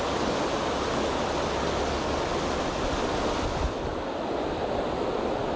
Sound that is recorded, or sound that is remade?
recorded